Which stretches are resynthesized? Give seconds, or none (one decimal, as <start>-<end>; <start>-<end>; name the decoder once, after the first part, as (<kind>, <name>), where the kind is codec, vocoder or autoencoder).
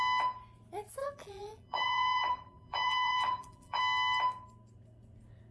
1.0-3.8 (vocoder, BigVGAN v2)